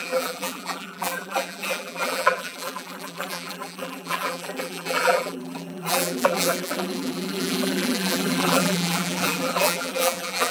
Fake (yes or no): yes